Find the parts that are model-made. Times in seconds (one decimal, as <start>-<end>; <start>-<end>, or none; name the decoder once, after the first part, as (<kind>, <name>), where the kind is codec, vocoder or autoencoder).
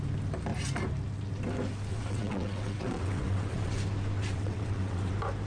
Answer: 1.9-3.8 (vocoder, WaveNeXt); 4.2-5.1